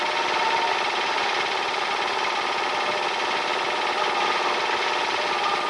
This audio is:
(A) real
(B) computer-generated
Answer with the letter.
A